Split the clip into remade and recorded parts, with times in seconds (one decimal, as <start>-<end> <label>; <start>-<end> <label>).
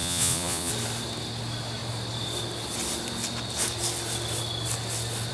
0.0-0.7 remade; 0.7-5.3 recorded